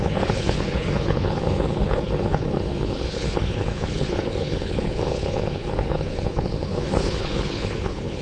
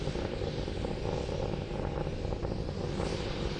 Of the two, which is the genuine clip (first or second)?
second